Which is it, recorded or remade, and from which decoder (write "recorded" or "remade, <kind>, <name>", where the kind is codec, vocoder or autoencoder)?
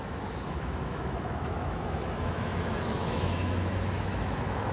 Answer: remade, autoencoder, DAC-VAE